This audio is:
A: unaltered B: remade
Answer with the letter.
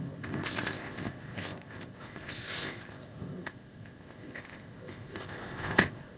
B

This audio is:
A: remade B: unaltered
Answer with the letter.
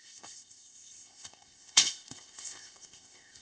A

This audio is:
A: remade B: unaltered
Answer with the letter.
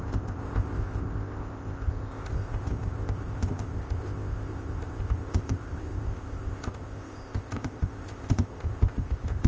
A